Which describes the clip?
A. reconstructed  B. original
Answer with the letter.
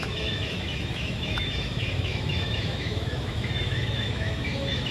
A